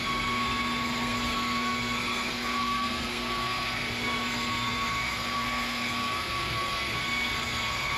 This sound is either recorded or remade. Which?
remade